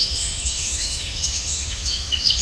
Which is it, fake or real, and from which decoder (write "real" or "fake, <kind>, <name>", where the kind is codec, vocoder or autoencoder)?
fake, autoencoder, DAC-VAE